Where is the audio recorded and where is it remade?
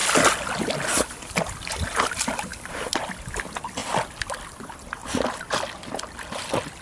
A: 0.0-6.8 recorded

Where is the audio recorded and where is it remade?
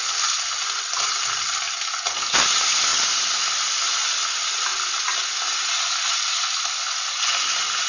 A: 0.0-4.7 recorded; 4.7-5.6 remade; 5.6-7.9 recorded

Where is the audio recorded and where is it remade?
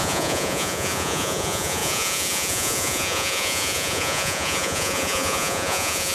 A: 0.0-6.1 remade